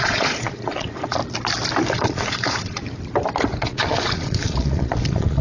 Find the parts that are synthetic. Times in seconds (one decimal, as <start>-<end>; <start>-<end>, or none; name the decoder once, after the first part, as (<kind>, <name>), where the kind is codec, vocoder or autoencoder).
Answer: 0.0-1.2 (vocoder, Vocos); 1.9-2.8; 3.6-5.4